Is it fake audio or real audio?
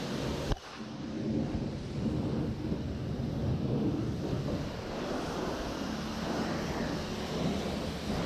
real